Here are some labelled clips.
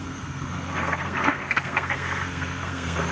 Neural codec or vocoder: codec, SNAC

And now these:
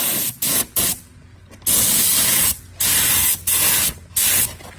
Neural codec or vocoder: none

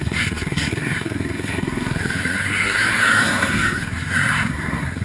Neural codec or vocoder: codec, SNAC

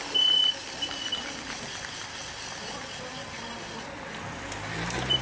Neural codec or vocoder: none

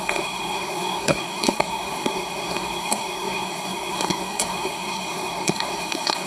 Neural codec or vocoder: codec, SNAC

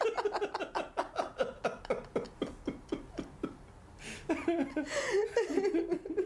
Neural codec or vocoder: none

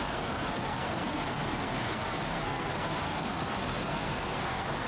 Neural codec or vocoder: codec, SNAC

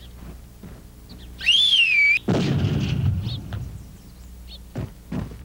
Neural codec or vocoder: none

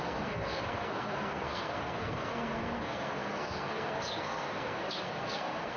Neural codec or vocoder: codec, SNAC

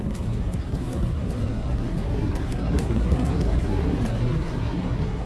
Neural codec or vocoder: codec, SNAC